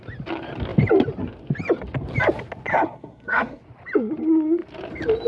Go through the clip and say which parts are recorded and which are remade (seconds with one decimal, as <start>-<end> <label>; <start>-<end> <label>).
0.0-2.7 recorded; 2.7-3.6 remade; 3.6-5.3 recorded